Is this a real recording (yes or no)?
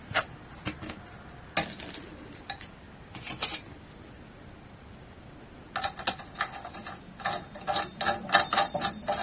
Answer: yes